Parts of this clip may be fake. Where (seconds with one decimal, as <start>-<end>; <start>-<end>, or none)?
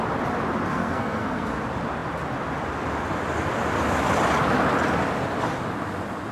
0.7-1.6